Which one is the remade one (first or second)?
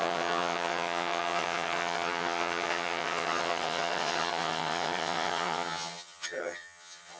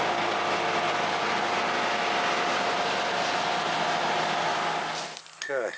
first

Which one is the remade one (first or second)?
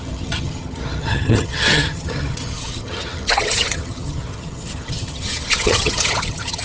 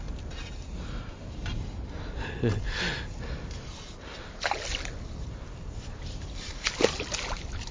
first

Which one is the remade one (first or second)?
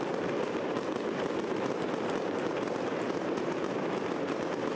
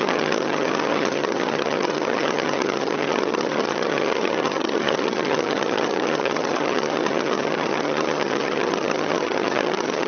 second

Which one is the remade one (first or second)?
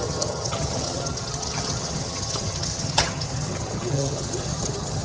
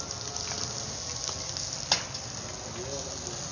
first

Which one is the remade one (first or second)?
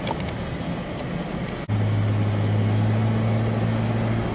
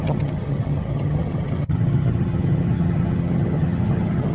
second